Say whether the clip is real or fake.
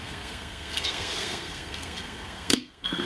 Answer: fake